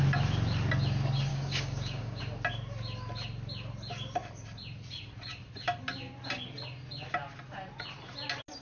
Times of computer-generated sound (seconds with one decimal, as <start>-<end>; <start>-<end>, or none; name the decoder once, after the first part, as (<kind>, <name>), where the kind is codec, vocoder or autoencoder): 1.3-2.2 (codec, DAC)